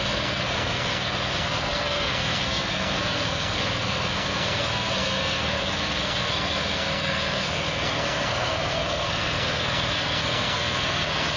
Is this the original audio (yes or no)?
no